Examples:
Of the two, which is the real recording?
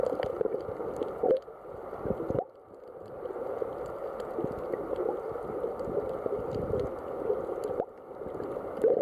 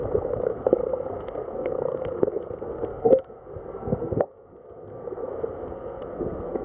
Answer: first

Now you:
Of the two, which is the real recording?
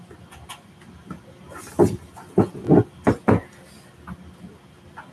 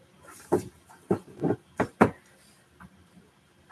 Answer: first